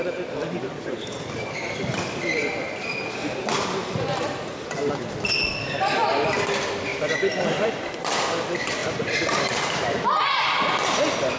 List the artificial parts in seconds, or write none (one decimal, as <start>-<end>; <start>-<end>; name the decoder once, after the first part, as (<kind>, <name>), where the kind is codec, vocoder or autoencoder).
0.4-1.3 (vocoder, BigVGAN v2); 6.9-7.9; 8.8-10.5

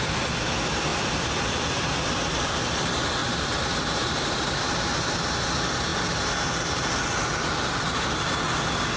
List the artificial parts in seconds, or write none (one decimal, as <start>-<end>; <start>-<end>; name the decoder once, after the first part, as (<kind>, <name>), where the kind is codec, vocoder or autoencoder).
0.9-1.9 (vocoder, BigVGAN v2); 3.2-5.2

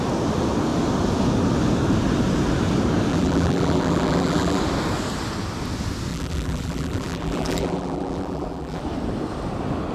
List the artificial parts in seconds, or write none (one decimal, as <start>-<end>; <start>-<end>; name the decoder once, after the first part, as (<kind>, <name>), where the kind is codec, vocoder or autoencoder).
3.1-4.6 (vocoder, BigVGAN v2); 6.1-8.8

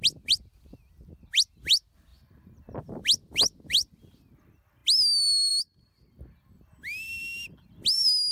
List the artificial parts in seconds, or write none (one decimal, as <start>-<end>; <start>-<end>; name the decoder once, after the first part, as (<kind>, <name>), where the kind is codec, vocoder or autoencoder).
2.1-3.0 (vocoder, BigVGAN v2)

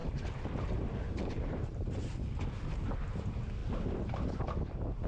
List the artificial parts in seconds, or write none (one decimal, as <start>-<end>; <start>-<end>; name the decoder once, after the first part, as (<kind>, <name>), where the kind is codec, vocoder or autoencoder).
0.0-2.1 (vocoder, BigVGAN v2); 3.6-4.4